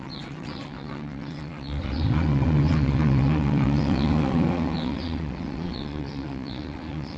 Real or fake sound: fake